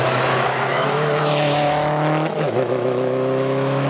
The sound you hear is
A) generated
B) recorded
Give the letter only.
A